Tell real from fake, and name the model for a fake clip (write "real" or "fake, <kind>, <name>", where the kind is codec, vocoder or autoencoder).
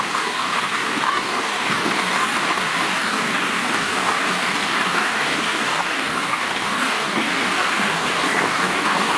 fake, codec, DAC